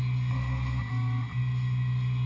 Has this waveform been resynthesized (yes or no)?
no